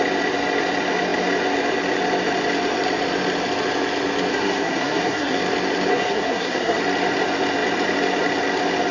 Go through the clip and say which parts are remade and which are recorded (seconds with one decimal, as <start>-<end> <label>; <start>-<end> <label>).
0.0-4.3 recorded; 4.3-5.4 remade; 5.4-5.9 recorded; 5.9-6.8 remade; 6.8-8.9 recorded